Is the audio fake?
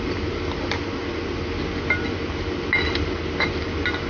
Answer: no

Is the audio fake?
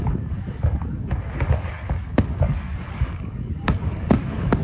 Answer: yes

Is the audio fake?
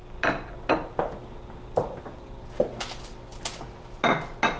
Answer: no